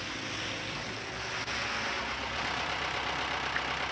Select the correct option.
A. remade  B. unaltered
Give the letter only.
B